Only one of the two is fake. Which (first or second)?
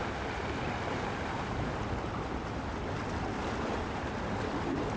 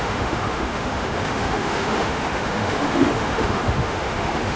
second